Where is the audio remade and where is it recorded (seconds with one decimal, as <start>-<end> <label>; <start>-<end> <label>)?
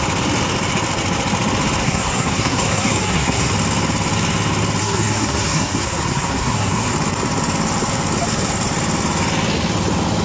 0.0-1.8 recorded; 1.8-3.5 remade; 3.5-4.8 recorded; 4.8-6.9 remade; 6.9-10.2 recorded